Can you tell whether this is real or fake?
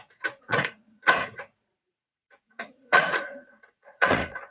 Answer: fake